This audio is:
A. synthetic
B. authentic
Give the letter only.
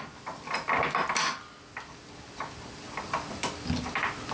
B